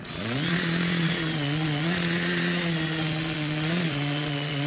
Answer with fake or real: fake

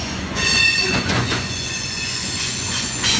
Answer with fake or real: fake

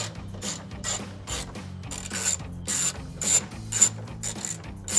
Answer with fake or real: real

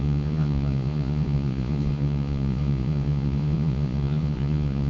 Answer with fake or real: fake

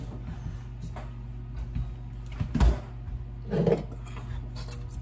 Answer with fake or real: real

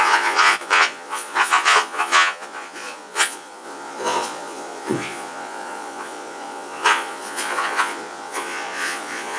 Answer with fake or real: fake